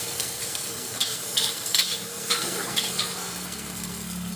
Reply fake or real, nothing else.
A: fake